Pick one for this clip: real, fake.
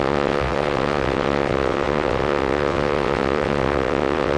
fake